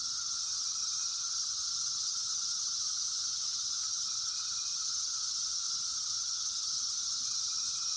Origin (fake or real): fake